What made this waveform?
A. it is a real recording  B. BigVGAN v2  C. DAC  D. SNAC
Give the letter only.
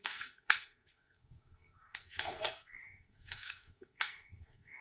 D